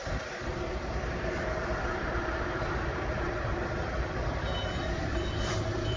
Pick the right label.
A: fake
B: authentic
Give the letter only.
A